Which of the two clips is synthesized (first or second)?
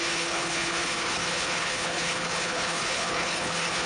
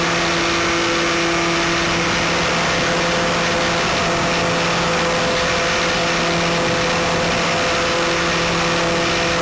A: first